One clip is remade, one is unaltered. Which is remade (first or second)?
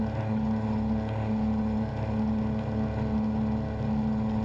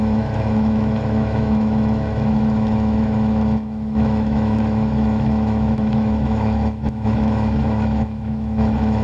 second